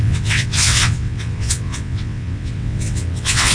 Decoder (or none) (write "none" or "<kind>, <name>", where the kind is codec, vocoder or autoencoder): vocoder, WaveNeXt